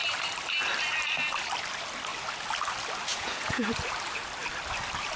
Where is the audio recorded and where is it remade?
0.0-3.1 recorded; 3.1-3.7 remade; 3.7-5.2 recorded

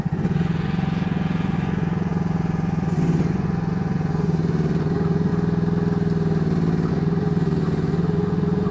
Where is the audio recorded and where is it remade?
0.0-5.3 remade; 5.3-6.9 recorded; 6.9-8.7 remade

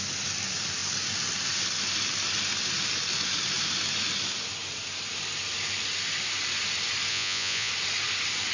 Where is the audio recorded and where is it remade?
0.0-7.1 recorded; 7.1-7.7 remade; 7.7-8.5 recorded

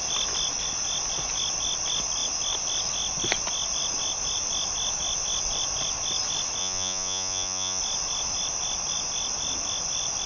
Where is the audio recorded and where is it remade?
0.0-6.6 recorded; 6.6-7.8 remade; 7.8-10.3 recorded

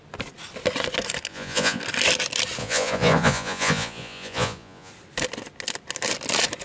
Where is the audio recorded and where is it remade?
0.0-1.3 recorded; 1.3-1.8 remade; 1.8-2.6 recorded; 2.6-4.9 remade; 4.9-6.6 recorded

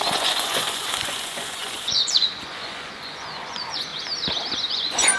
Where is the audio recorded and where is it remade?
0.0-3.9 remade; 3.9-4.7 recorded; 4.7-5.2 remade

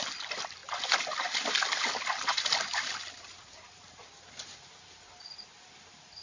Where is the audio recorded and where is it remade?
0.0-6.2 recorded